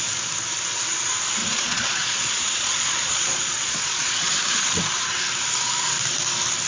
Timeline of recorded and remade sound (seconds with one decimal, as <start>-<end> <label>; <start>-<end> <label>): 0.0-1.4 recorded; 1.4-4.4 remade; 4.4-6.7 recorded